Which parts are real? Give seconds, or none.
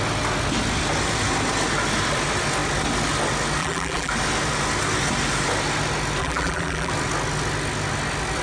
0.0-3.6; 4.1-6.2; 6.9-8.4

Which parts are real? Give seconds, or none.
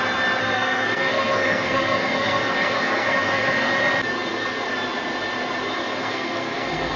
0.0-0.4; 3.7-6.0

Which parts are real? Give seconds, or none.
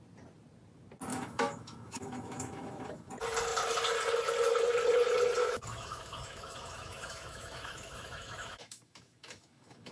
0.0-1.1; 3.1-5.4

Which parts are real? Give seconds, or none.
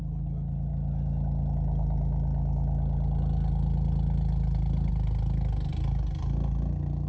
0.0-7.1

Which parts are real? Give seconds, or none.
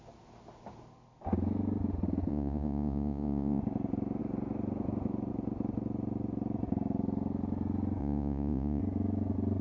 0.0-2.3; 3.6-8.0; 8.8-9.6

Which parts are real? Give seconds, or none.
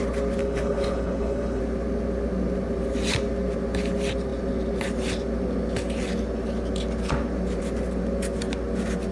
0.0-0.4; 1.6-9.1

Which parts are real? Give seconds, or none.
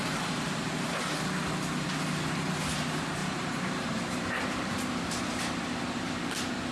0.5-3.2; 6.2-6.7